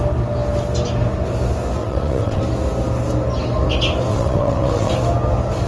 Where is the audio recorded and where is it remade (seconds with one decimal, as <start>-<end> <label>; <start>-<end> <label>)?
0.0-1.8 recorded; 1.8-2.4 remade; 2.4-4.1 recorded; 4.1-4.9 remade; 4.9-5.7 recorded